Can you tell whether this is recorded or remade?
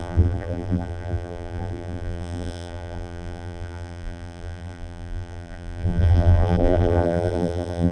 remade